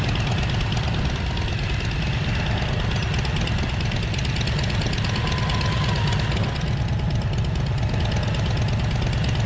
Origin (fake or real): real